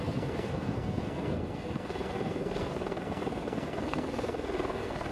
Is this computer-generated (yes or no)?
yes